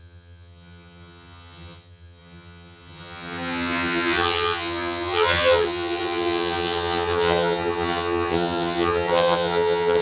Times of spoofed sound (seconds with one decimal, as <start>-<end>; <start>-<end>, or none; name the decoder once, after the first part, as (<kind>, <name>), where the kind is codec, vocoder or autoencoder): 0.0-10.0 (vocoder, HiFi-GAN)